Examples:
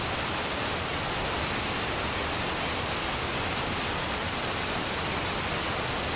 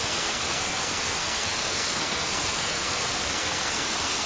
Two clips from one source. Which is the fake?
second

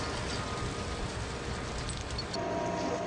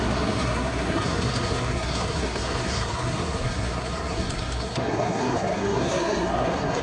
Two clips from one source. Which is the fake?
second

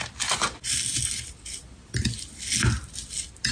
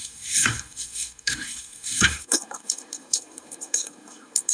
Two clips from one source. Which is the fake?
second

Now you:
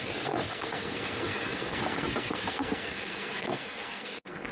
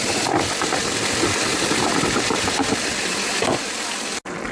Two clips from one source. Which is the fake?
first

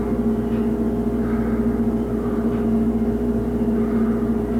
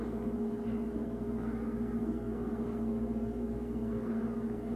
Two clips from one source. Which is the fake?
second